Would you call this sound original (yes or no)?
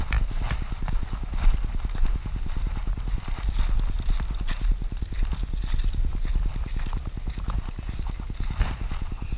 yes